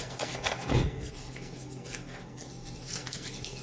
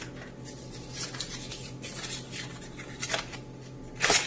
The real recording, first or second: second